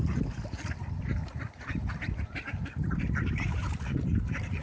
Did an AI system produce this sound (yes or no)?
yes